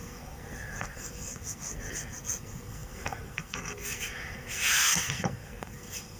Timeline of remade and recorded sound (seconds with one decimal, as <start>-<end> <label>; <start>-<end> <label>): 0.0-6.2 remade